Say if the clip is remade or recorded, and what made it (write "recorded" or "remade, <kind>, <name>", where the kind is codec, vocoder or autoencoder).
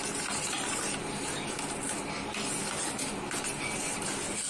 recorded